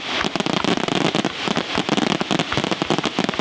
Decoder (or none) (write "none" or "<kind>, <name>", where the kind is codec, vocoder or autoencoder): none